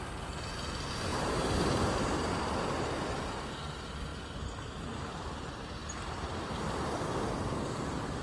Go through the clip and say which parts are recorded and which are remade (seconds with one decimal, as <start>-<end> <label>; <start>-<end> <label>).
0.0-1.1 recorded; 1.1-2.4 remade; 2.4-5.8 recorded; 5.8-6.6 remade; 6.6-8.2 recorded